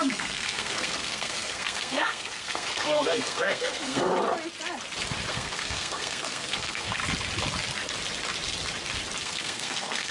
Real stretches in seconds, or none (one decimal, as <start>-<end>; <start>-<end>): 4.1-5.3; 7.0-9.2